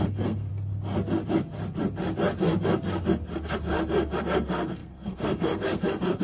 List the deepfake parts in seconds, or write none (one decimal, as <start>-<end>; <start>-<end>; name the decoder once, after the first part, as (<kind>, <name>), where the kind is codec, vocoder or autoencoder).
0.0-0.5 (codec, SNAC); 4.2-6.2